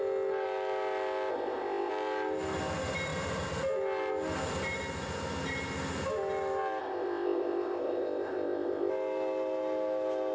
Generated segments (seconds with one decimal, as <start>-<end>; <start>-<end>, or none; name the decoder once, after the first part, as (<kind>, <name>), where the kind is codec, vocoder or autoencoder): 1.3-1.9 (codec, ZipCodec); 6.8-8.9